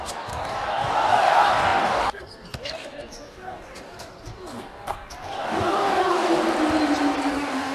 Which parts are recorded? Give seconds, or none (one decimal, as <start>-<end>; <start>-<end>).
6.4-7.3